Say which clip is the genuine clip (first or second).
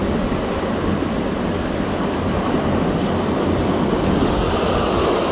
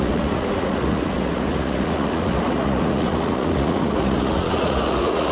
first